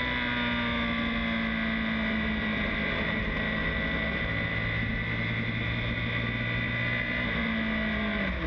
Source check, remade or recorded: recorded